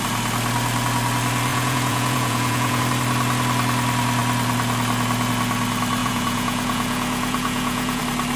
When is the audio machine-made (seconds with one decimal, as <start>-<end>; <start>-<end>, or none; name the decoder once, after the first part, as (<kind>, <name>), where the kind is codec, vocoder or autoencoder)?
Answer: 1.5-2.8 (vocoder, Vocos); 6.0-8.0